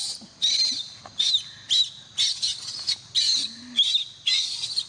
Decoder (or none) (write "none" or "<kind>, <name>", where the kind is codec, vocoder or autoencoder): none